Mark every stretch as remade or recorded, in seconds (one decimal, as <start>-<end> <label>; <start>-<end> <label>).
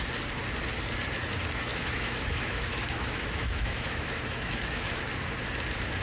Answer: 0.0-1.7 recorded; 1.7-5.0 remade; 5.0-6.0 recorded